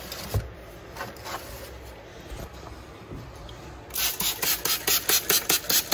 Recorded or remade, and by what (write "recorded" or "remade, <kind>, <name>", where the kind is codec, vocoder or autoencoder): recorded